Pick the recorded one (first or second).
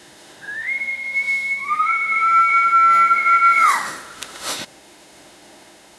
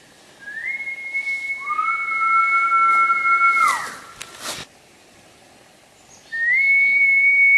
second